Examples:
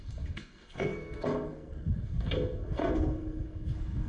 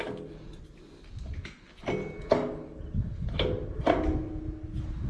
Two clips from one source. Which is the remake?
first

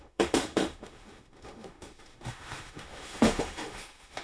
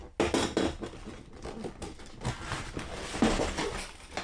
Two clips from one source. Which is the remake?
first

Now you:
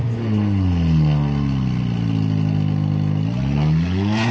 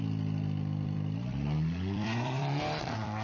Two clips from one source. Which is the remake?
second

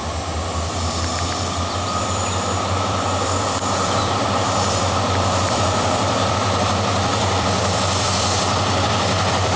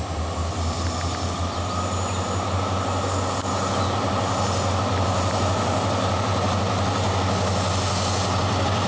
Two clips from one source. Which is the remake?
first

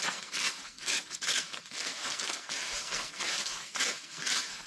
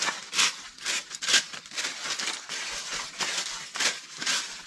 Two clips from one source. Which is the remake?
first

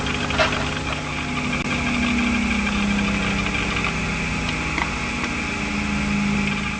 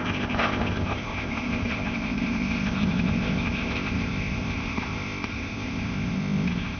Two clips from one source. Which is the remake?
second